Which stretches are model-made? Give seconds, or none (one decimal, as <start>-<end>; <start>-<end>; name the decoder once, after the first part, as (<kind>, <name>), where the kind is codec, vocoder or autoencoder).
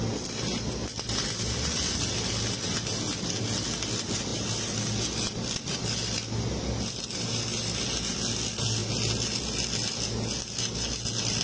none